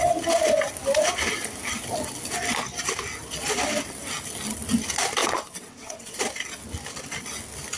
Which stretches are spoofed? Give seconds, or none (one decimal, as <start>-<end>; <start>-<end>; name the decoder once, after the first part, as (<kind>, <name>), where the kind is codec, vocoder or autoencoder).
5.2-6.2 (vocoder, WaveNeXt)